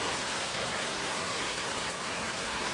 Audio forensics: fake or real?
fake